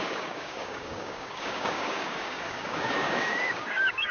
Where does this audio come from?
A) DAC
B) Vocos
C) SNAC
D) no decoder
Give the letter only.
A